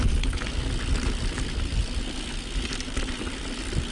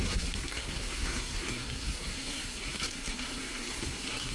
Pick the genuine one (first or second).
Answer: first